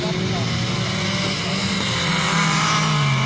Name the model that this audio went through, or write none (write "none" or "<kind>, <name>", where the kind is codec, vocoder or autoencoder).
none